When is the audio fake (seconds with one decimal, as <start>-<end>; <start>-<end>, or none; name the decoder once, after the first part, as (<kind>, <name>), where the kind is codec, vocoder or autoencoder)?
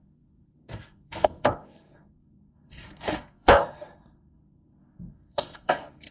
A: 0.0-6.1 (codec, SNAC)